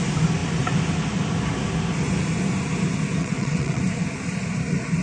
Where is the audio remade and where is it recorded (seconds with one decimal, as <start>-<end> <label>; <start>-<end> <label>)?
0.0-3.2 recorded; 3.2-3.8 remade; 3.8-5.0 recorded